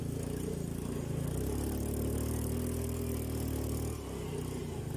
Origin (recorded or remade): recorded